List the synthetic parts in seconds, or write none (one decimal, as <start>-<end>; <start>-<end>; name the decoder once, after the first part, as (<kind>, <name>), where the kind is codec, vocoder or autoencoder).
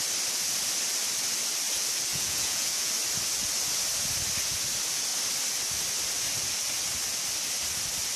2.1-2.9 (vocoder, Vocos)